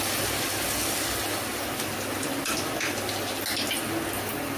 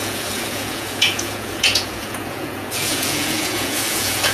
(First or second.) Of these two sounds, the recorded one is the first